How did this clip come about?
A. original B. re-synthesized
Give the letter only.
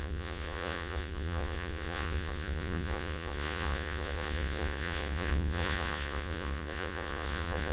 B